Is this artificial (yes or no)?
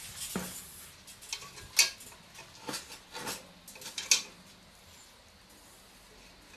no